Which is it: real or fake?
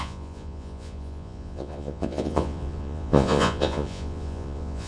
fake